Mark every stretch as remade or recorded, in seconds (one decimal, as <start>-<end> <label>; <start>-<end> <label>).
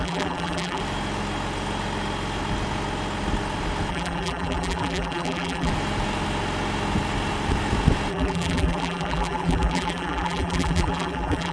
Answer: 0.0-0.8 remade; 0.8-3.9 recorded; 3.9-5.7 remade; 5.7-8.1 recorded; 8.1-11.5 remade